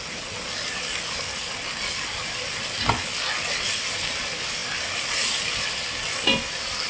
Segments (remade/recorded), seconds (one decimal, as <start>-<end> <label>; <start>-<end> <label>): 0.0-6.9 recorded